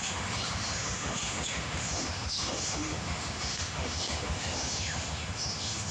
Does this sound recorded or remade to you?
remade